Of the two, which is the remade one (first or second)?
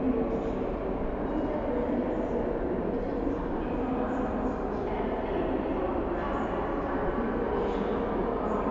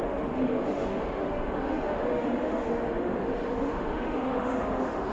second